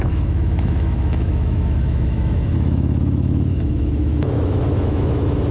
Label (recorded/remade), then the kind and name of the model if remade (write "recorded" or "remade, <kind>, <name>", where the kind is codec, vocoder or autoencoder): remade, autoencoder, DAC-VAE